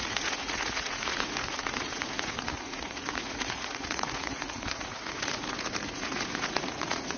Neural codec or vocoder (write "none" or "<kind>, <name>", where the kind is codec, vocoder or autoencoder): vocoder, Vocos